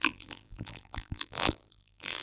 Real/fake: fake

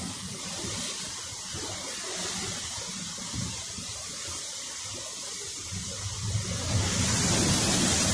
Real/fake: real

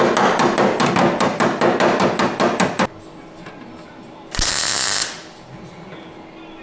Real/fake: real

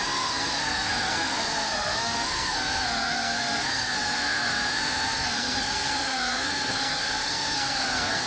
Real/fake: fake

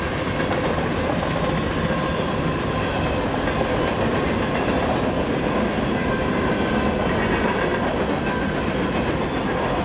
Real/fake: real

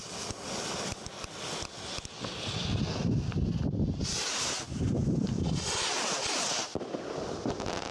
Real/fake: real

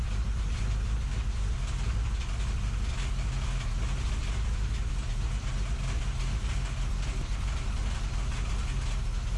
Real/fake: real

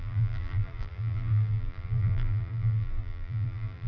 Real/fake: fake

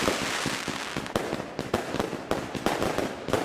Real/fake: real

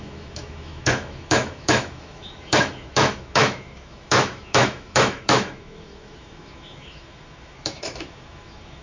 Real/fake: fake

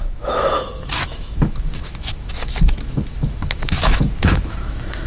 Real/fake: fake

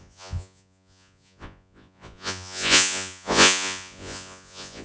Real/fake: fake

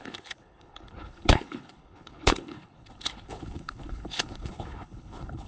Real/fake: fake